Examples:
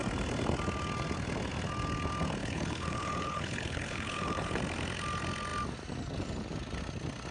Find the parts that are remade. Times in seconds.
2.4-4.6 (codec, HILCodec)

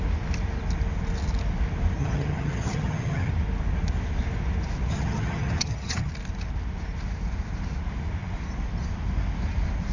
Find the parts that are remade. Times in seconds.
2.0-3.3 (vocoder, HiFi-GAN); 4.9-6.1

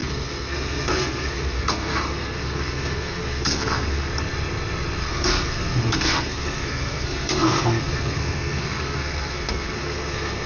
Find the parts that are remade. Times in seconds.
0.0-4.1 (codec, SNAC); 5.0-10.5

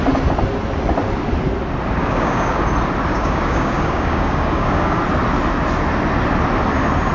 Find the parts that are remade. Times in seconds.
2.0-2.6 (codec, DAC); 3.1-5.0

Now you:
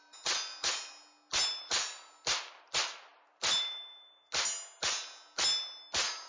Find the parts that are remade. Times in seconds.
none